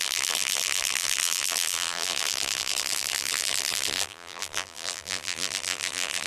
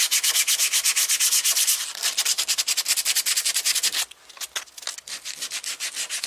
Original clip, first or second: second